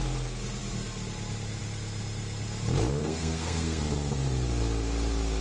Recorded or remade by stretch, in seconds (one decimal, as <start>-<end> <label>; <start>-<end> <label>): 0.0-3.0 recorded; 3.0-3.8 remade; 3.8-5.4 recorded